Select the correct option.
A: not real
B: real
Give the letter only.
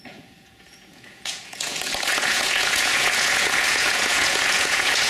A